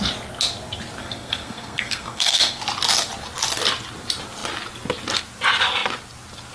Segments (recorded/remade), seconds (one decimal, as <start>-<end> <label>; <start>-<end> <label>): 0.0-1.0 recorded; 1.0-2.6 remade; 2.6-6.5 recorded